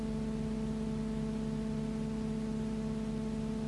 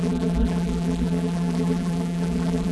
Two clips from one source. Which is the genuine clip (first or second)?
first